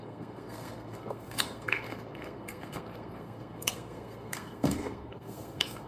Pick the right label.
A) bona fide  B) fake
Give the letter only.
B